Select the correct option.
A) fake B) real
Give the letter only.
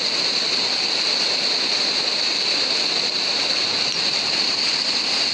B